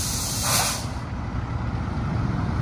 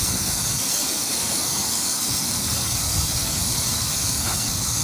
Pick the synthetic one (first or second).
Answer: second